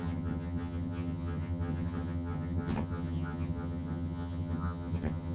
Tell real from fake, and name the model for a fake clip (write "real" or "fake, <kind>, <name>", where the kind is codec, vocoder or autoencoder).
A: fake, vocoder, HiFi-GAN